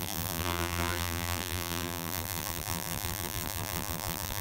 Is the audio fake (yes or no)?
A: yes